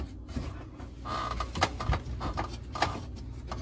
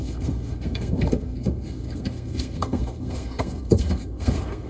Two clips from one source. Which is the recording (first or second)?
first